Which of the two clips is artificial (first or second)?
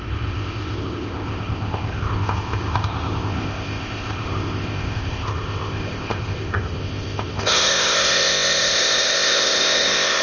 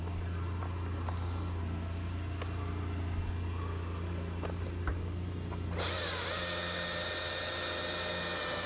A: first